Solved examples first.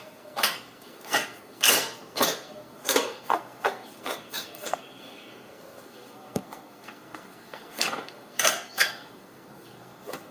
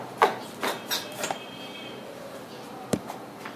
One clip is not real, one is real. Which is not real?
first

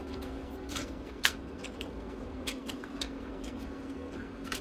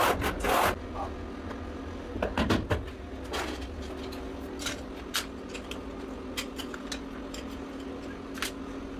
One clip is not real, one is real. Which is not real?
first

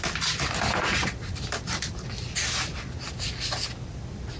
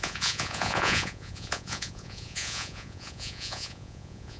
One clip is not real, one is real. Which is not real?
second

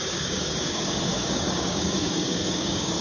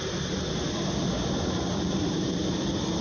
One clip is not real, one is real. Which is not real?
first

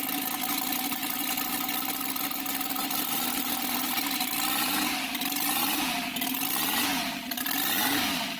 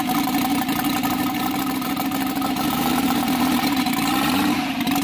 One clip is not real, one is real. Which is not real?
second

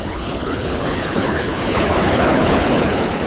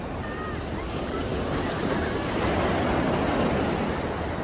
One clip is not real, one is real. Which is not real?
first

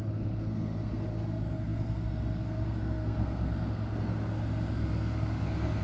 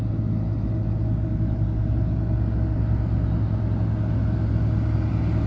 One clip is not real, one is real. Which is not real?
first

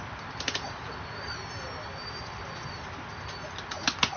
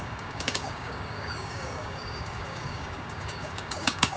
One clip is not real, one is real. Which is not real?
second